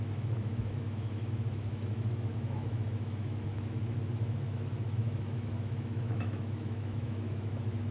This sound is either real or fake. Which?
fake